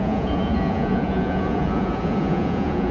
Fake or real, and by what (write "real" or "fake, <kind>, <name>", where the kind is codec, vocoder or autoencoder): fake, vocoder, Vocos